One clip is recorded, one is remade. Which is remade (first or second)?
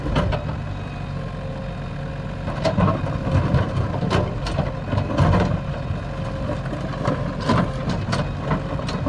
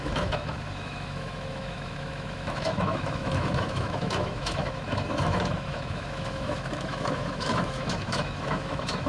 second